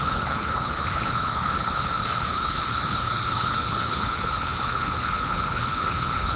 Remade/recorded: remade